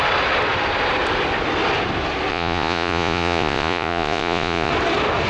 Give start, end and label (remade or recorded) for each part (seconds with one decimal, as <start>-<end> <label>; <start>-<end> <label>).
0.0-2.3 recorded; 2.3-4.7 remade; 4.7-5.3 recorded